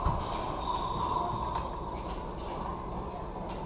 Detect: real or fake real